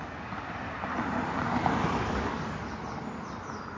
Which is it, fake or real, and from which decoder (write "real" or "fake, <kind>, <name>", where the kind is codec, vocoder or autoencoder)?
real